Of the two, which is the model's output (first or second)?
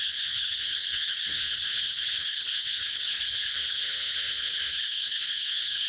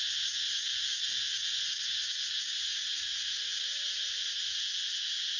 first